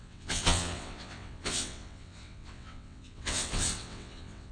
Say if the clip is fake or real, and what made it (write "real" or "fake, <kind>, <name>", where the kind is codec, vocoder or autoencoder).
fake, vocoder, WaveNeXt